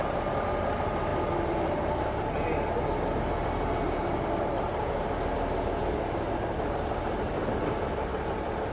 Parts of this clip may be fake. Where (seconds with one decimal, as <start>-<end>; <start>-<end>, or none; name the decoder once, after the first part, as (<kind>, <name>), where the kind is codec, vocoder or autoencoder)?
none